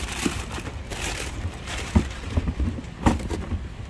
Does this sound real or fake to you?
real